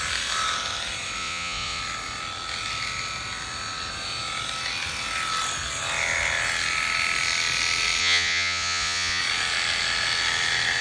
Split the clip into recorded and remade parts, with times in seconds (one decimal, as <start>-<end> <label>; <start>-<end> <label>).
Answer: 0.0-1.2 recorded; 1.2-1.8 remade; 1.8-8.0 recorded; 8.0-9.2 remade; 9.2-10.8 recorded